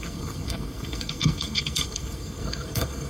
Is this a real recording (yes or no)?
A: no